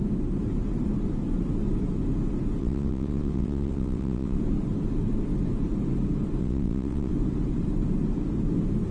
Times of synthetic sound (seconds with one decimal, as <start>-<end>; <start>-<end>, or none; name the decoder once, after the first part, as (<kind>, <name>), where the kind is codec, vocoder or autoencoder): 2.6-4.4 (vocoder, WaveNeXt); 6.4-7.1